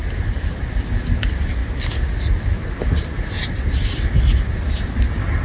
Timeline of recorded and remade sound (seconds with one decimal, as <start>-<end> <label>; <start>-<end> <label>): 0.0-5.4 recorded